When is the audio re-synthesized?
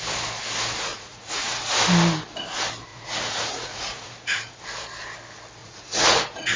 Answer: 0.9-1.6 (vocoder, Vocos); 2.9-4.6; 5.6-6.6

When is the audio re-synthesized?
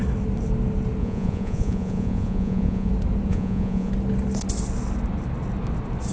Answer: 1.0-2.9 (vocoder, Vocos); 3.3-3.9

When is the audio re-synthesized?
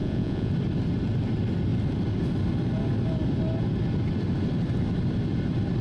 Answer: 0.0-0.5 (vocoder, Vocos)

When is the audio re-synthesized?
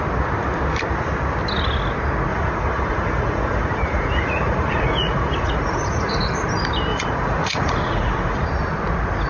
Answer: 2.3-6.2 (vocoder, Vocos); 6.9-8.4